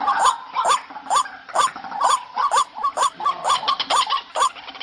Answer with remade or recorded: recorded